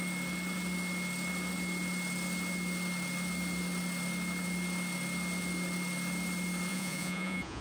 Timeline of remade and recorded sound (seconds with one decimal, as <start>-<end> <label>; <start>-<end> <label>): 0.0-6.7 recorded; 6.7-7.6 remade